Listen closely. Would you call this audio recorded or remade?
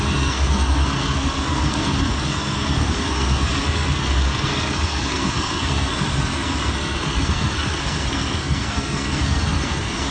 remade